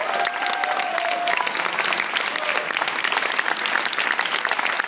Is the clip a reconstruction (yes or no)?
no